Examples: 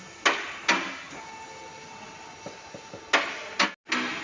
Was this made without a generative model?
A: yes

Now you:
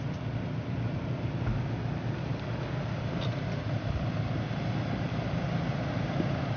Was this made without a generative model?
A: yes